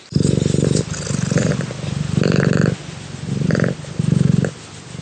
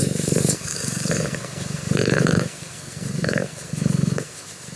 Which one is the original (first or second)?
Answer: first